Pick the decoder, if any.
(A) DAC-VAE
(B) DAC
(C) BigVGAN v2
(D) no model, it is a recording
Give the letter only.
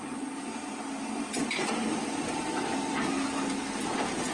D